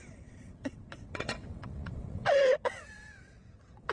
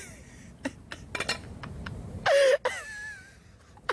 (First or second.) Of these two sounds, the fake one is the first